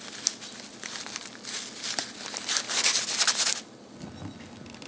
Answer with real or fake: real